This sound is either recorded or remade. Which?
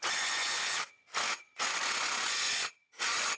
remade